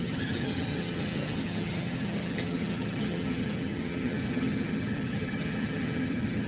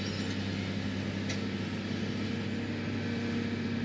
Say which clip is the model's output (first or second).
first